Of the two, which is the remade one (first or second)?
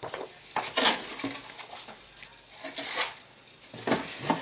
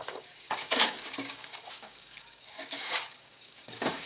second